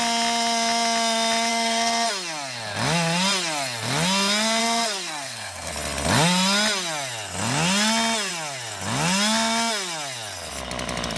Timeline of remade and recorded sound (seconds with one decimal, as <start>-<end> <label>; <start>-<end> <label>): 0.0-1.5 recorded; 1.5-2.1 remade; 2.1-4.6 recorded; 4.6-5.7 remade; 5.7-11.2 recorded